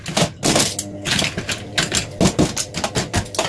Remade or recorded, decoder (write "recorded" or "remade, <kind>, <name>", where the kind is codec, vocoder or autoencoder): recorded